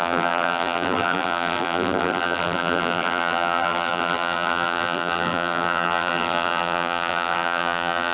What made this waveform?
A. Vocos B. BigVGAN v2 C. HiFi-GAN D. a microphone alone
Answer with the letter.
B